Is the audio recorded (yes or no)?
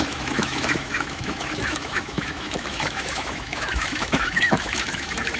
no